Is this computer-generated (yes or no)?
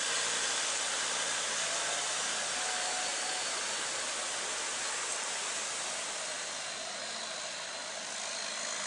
no